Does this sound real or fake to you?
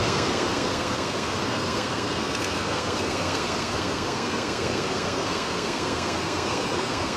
fake